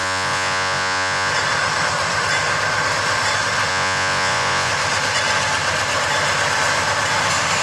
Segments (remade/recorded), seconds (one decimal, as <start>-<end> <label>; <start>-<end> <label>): 0.0-1.3 remade; 1.3-3.7 recorded; 3.7-4.7 remade; 4.7-7.6 recorded